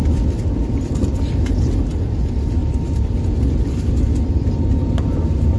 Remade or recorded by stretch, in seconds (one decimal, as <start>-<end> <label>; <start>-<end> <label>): 0.0-2.6 recorded; 2.6-3.1 remade; 3.1-5.6 recorded